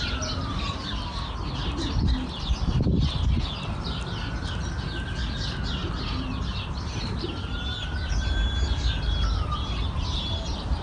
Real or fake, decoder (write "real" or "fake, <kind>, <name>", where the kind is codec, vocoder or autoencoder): real